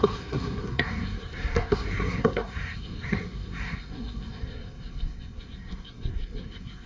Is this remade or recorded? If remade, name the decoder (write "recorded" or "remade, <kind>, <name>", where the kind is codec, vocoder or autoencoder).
remade, codec, SNAC